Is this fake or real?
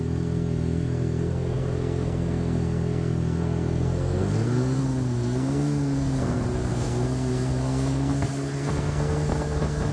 fake